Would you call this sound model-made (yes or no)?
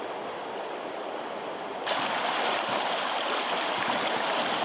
no